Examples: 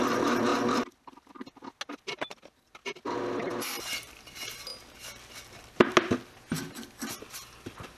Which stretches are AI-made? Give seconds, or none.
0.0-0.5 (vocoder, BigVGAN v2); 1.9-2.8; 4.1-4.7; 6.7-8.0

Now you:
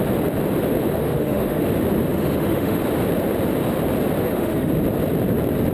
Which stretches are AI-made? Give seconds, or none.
1.0-1.6 (autoencoder, DAC-VAE); 2.1-2.8; 4.2-4.7